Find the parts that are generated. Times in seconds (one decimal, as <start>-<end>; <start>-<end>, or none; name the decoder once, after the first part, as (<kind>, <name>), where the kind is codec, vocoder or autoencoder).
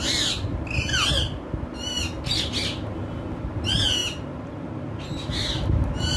none